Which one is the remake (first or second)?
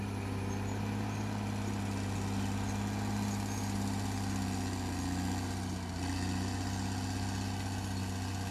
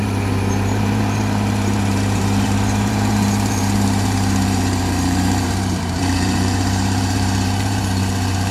second